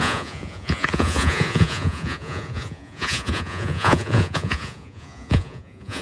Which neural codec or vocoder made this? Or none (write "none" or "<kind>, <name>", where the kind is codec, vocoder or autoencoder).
vocoder, Vocos